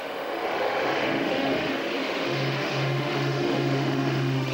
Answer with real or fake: fake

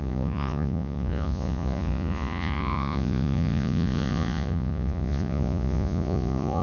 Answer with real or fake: fake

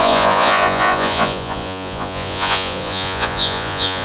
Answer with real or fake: fake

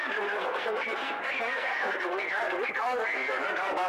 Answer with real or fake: fake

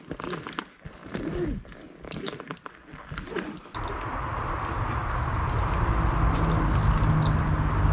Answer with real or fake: real